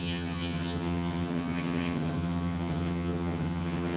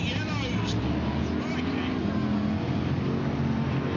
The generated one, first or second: first